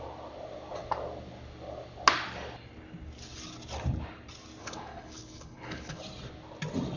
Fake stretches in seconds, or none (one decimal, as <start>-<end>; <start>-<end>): 4.6-6.0